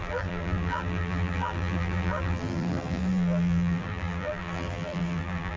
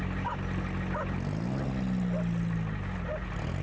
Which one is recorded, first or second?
second